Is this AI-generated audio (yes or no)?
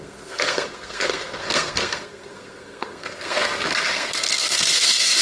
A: yes